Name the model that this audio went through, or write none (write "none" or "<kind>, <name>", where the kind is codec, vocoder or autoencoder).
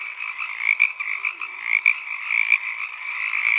none